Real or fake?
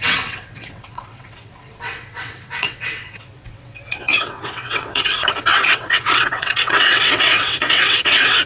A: fake